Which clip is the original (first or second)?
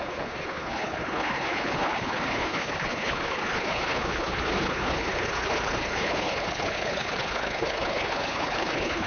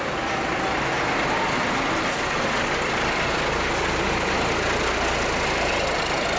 second